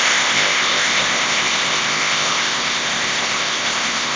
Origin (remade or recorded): remade